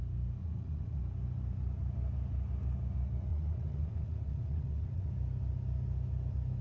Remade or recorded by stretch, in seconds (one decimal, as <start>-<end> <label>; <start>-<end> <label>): 0.0-0.4 recorded; 0.4-1.0 remade; 1.0-3.3 recorded; 3.3-5.1 remade; 5.1-6.6 recorded